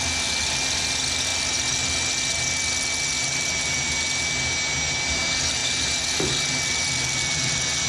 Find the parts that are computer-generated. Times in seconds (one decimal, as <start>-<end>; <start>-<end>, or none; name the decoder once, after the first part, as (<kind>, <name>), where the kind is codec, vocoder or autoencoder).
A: none